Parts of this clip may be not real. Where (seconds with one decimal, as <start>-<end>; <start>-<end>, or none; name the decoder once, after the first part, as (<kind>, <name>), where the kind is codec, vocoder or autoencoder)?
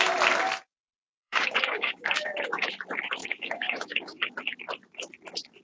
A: 1.2-2.7 (codec, DAC); 3.2-4.3